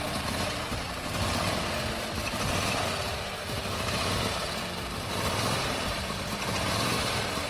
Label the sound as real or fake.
fake